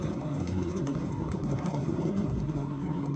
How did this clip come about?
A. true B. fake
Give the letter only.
B